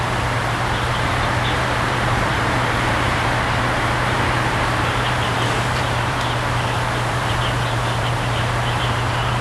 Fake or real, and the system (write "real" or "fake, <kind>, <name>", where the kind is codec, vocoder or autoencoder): fake, vocoder, BigVGAN v2